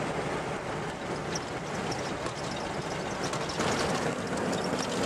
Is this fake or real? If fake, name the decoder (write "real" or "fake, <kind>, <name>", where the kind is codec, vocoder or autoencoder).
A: real